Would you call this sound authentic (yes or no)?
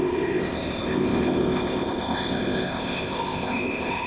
no